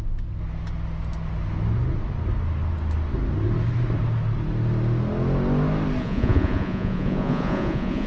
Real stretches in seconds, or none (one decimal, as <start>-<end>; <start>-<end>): 0.0-6.0